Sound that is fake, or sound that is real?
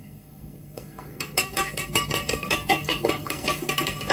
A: fake